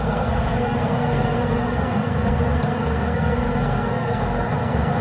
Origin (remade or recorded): remade